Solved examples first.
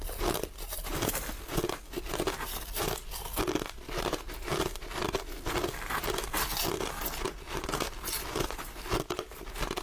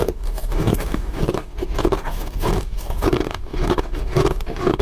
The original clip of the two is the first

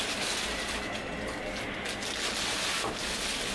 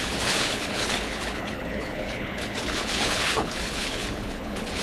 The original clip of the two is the first